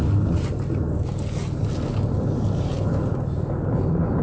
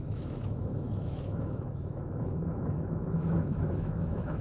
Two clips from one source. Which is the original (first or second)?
first